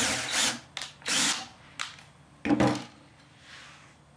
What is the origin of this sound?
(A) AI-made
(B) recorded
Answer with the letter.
B